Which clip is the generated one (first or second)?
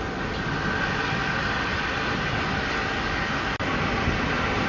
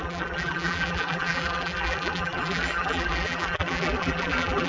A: second